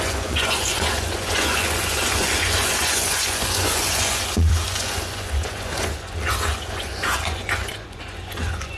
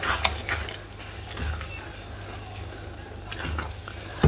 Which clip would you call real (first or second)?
second